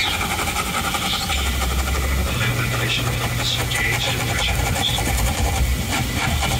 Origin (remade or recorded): recorded